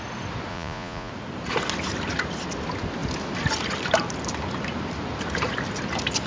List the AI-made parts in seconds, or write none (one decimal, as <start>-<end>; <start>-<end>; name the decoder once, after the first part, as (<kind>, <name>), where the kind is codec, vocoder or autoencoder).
0.5-1.1 (vocoder, Vocos)